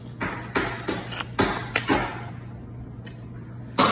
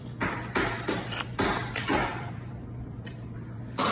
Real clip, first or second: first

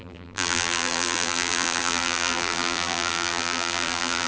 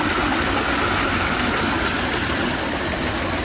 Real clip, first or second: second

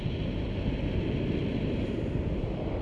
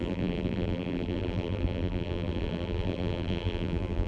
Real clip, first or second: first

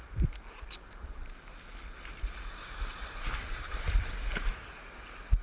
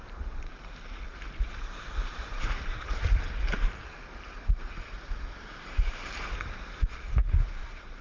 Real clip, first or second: first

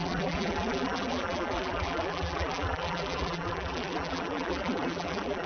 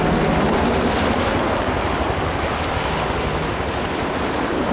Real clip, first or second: second